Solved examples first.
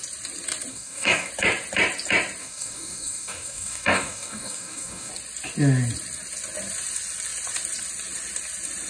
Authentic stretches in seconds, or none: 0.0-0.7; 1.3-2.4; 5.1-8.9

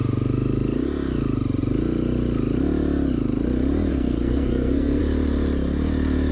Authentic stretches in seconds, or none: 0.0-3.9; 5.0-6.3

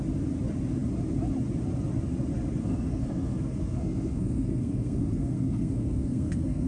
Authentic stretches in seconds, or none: 0.0-2.6

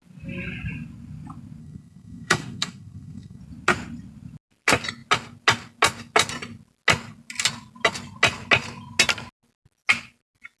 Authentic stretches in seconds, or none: 0.0-1.6; 3.4-10.6

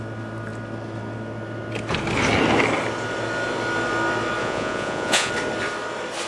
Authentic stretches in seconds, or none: 0.0-4.4; 5.3-6.3

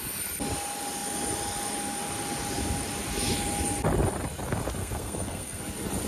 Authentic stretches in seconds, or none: 0.0-4.8; 5.6-6.1

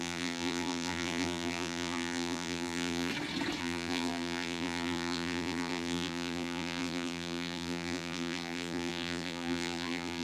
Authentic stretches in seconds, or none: 3.1-3.6